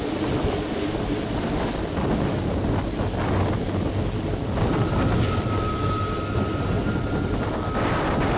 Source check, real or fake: real